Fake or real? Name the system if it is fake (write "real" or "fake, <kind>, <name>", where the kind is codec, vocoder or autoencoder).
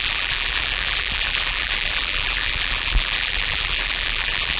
fake, vocoder, BigVGAN v2